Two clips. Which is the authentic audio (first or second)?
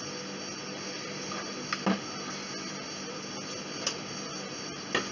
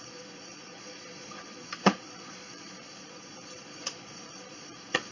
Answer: first